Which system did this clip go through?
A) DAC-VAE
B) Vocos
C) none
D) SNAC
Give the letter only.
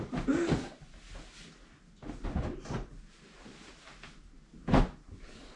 C